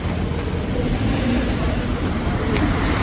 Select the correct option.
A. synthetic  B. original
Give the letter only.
A